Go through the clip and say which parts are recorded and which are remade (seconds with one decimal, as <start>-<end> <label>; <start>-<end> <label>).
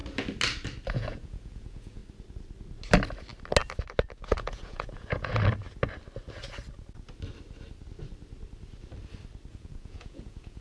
0.0-0.9 recorded; 0.9-2.0 remade; 2.0-4.1 recorded; 4.1-5.3 remade; 5.3-9.5 recorded; 9.5-10.6 remade